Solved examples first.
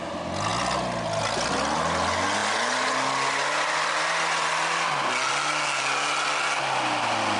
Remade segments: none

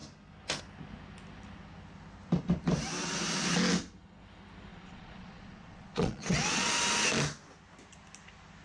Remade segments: 4.7-6.7

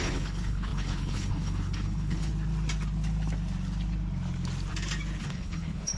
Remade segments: 0.0-2.3; 5.2-6.0

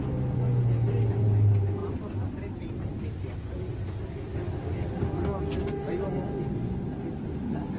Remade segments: none

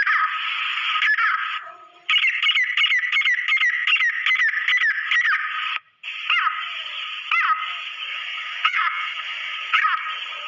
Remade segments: 8.1-9.8